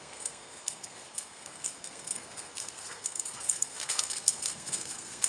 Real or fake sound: fake